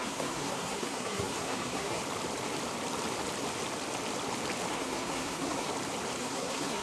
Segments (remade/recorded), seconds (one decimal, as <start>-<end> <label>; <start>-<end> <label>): 0.0-2.0 remade; 2.0-4.7 recorded; 4.7-5.7 remade; 5.7-6.2 recorded; 6.2-6.8 remade